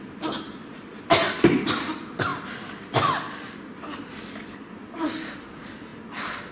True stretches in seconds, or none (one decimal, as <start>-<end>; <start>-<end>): 5.9-6.5